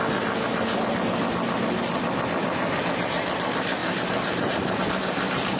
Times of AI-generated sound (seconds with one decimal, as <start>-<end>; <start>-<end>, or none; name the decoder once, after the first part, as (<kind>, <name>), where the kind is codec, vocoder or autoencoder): 3.8-4.8 (vocoder, BigVGAN v2)